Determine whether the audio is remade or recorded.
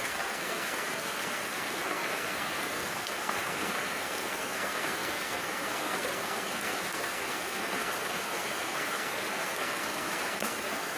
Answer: remade